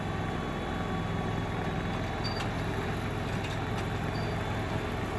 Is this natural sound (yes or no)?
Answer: yes